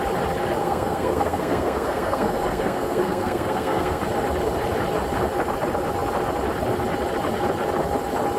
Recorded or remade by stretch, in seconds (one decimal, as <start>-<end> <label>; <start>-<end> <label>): 0.0-0.6 recorded; 0.6-4.0 remade; 4.0-8.4 recorded